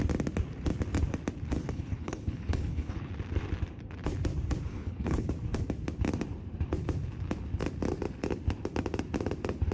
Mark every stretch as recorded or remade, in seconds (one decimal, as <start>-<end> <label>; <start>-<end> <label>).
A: 0.0-1.6 recorded; 1.6-3.1 remade; 3.1-4.7 recorded; 4.7-5.3 remade; 5.3-9.7 recorded

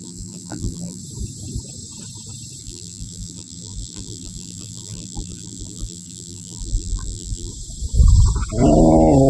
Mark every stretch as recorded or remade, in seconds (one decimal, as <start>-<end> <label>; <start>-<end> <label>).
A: 0.0-1.0 remade; 1.0-2.6 recorded; 2.6-7.5 remade; 7.5-9.3 recorded

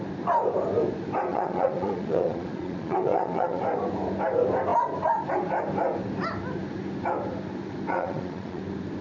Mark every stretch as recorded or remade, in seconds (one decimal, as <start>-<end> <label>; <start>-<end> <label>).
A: 0.0-1.3 recorded; 1.3-3.6 remade; 3.6-7.9 recorded; 7.9-8.6 remade; 8.6-9.0 recorded

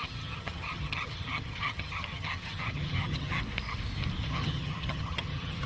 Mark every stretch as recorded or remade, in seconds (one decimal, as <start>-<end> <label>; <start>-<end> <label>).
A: 0.0-3.4 remade; 3.4-4.3 recorded; 4.3-5.7 remade

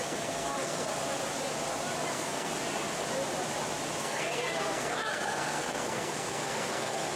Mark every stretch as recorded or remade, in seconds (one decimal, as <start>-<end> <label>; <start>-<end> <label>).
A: 0.0-0.9 remade; 0.9-2.1 recorded; 2.1-2.5 remade; 2.5-4.0 recorded; 4.0-7.2 remade